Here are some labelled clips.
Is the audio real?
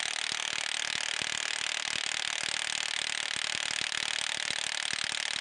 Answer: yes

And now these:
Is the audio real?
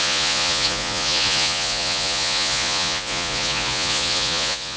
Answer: no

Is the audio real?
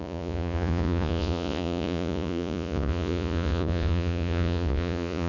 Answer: no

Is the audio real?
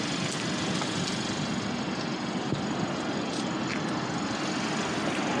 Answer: yes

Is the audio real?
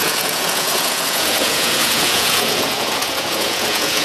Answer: no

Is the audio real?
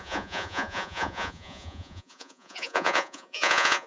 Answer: no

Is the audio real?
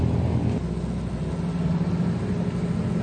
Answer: yes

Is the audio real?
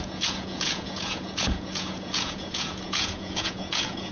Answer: no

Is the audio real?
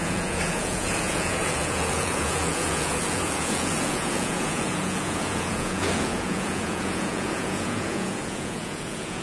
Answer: no